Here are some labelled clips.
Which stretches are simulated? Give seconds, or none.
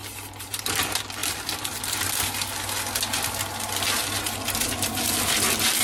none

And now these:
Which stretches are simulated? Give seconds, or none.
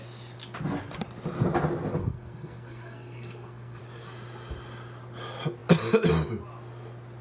2.0-3.8 (codec, SNAC)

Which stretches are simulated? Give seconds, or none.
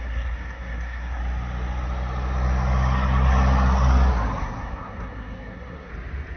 0.0-1.2 (codec, SNAC); 4.4-5.9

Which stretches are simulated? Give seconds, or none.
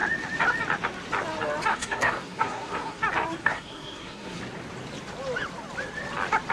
1.7-3.0 (codec, SNAC); 3.4-4.4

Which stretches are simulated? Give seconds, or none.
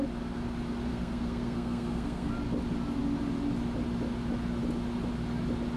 0.9-2.3 (codec, SNAC)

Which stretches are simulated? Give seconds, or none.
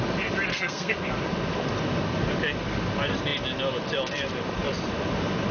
0.5-1.1 (codec, SNAC)